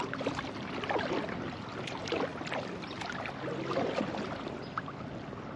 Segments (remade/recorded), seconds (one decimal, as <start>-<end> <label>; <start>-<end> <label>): 0.0-2.3 recorded; 2.3-3.0 remade; 3.0-5.6 recorded